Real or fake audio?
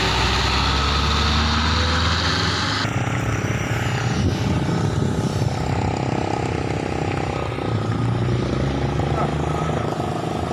real